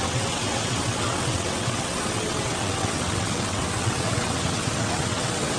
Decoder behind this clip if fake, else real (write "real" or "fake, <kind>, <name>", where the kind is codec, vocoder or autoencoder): fake, vocoder, WaveNeXt